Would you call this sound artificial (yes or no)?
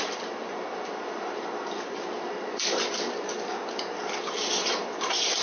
yes